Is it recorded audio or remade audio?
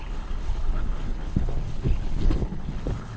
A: remade